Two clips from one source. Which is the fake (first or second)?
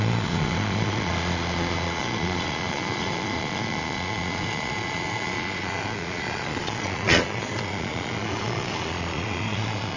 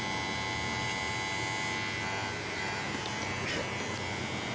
first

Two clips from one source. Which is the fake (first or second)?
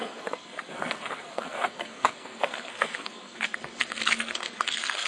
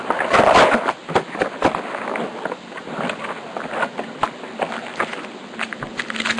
first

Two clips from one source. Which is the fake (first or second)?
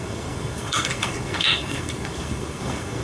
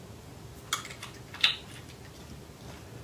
first